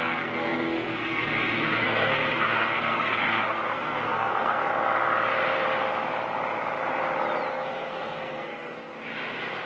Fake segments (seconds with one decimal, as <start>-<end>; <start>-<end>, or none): 0.0-4.7; 7.5-8.9